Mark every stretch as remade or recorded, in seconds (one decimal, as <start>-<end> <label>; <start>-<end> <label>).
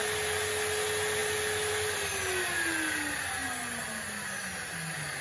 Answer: 0.0-5.2 recorded